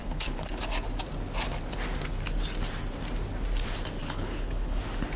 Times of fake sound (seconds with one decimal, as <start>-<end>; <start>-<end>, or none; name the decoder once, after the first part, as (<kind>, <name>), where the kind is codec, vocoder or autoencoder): 0.0-0.6 (codec, HILCodec); 4.0-4.8